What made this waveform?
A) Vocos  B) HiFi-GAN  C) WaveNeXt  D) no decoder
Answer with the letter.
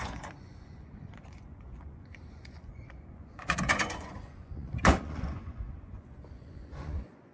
A